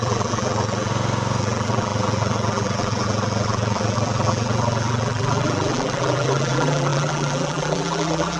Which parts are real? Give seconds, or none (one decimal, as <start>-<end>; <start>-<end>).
0.9-1.4